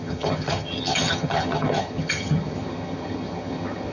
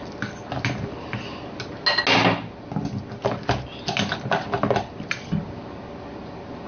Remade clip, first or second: first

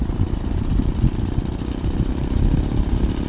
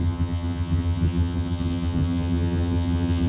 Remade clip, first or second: second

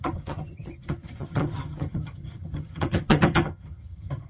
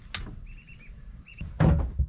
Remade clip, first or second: first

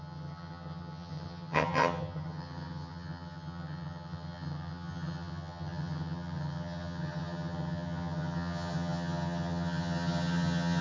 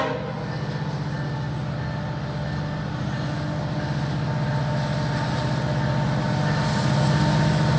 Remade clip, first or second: first